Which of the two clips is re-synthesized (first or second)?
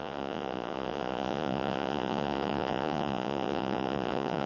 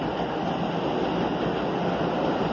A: first